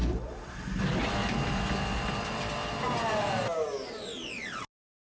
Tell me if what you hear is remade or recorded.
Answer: recorded